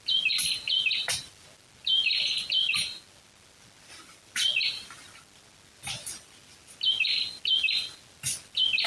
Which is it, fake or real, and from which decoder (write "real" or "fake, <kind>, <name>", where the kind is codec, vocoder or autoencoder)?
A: real